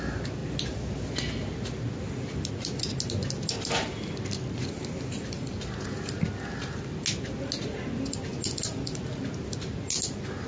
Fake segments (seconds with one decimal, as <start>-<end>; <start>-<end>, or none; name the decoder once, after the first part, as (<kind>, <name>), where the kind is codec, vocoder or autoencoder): none